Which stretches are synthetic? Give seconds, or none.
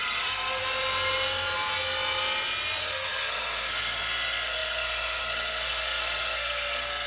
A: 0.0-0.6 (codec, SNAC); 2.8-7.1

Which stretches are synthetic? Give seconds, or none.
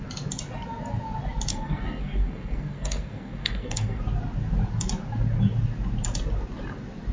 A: 1.5-4.0 (codec, SNAC)